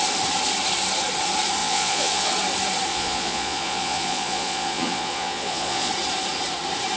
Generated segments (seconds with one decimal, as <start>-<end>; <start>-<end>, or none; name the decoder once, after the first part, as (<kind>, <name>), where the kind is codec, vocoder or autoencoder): 1.6-2.3 (vocoder, Vocos); 2.9-5.9